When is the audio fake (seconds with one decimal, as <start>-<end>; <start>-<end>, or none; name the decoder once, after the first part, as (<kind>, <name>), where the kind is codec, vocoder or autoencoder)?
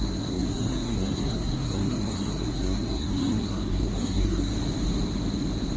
0.0-4.5 (codec, SNAC)